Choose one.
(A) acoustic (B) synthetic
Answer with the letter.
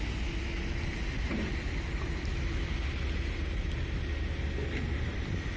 A